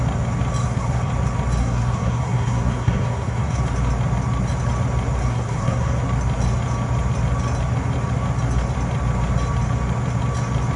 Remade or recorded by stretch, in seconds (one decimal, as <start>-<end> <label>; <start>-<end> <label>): 0.0-0.6 recorded; 0.6-1.1 remade; 1.1-1.6 recorded; 1.6-3.6 remade; 3.6-5.2 recorded; 5.2-6.0 remade; 6.0-10.8 recorded